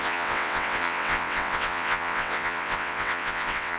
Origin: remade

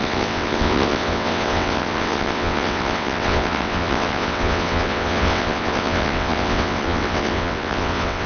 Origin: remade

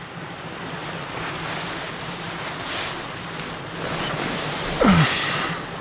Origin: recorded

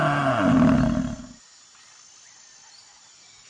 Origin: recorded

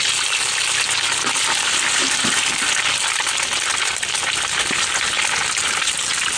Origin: recorded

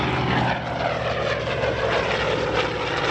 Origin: recorded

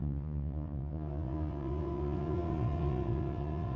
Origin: remade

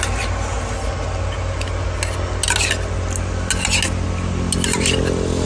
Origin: recorded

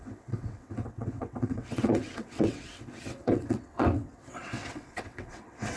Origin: remade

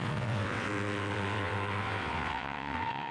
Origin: remade